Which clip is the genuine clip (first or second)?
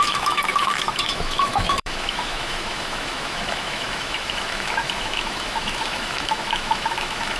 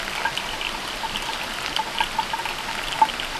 second